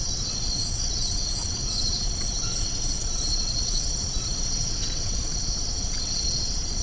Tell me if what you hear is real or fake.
fake